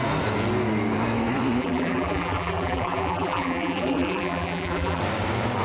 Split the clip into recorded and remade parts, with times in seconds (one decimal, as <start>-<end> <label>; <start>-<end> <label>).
0.0-1.6 recorded; 1.6-5.0 remade; 5.0-5.6 recorded